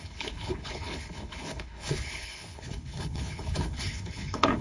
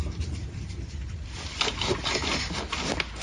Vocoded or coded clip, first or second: first